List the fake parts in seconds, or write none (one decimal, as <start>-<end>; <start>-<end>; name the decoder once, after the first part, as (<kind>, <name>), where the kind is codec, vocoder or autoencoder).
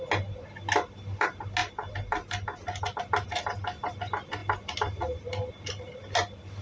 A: none